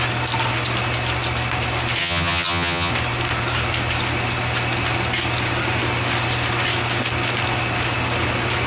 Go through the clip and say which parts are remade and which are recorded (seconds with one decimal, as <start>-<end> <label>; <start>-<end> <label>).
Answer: 0.0-2.0 recorded; 2.0-2.9 remade; 2.9-8.7 recorded